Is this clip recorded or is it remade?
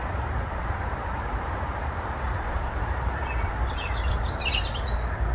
remade